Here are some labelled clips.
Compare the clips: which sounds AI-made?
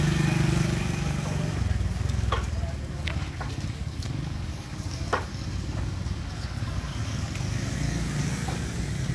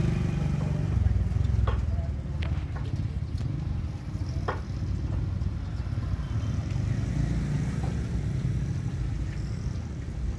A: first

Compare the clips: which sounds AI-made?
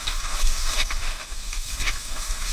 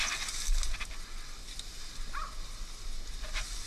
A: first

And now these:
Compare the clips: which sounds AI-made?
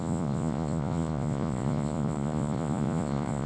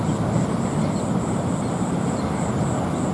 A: first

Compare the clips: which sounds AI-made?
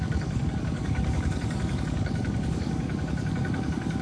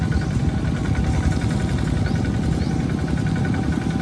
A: first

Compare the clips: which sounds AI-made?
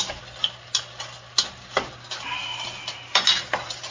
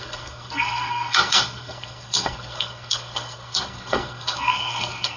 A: second